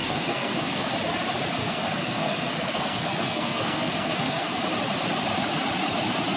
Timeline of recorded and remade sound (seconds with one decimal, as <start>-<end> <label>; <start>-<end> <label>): 0.0-0.9 remade; 0.9-1.6 recorded; 1.6-4.6 remade; 4.6-6.4 recorded

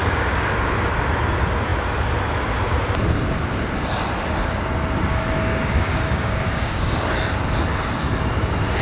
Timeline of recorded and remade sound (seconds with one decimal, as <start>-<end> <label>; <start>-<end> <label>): 0.0-0.5 remade; 0.5-5.5 recorded; 5.5-7.1 remade; 7.1-8.8 recorded

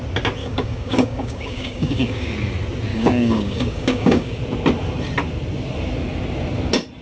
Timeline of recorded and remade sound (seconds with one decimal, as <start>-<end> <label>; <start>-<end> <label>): 0.0-0.4 recorded; 0.4-2.3 remade; 2.3-2.9 recorded; 2.9-4.4 remade; 4.4-7.0 recorded